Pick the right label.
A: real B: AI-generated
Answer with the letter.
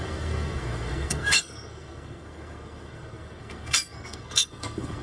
B